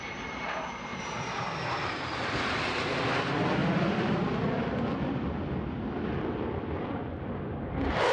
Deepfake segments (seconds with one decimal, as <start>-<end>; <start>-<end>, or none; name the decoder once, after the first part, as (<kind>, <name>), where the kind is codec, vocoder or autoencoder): 0.9-3.0 (vocoder, BigVGAN v2)